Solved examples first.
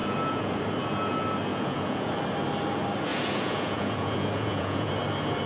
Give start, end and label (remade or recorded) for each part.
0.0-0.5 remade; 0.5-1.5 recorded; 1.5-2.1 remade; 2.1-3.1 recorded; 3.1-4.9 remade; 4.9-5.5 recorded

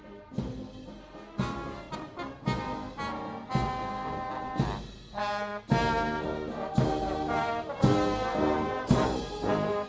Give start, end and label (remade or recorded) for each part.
0.0-9.9 recorded

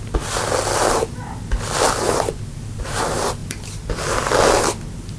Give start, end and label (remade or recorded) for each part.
0.0-5.2 recorded

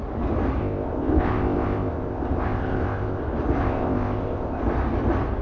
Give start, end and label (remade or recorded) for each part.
0.0-0.6 recorded; 0.6-3.2 remade; 3.2-3.6 recorded; 3.6-4.6 remade; 4.6-5.4 recorded

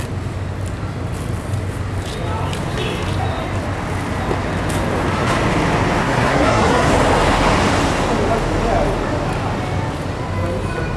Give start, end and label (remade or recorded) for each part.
0.0-6.0 recorded; 6.0-6.9 remade; 6.9-11.0 recorded

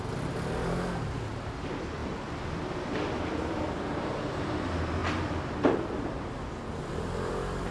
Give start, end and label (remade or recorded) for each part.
0.0-2.0 recorded; 2.0-4.2 remade; 4.2-5.0 recorded; 5.0-7.3 remade; 7.3-7.7 recorded

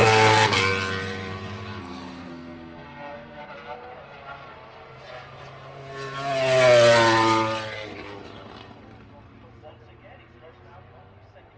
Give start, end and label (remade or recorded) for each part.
0.0-0.6 remade; 0.6-1.8 recorded; 1.8-3.4 remade; 3.4-11.6 recorded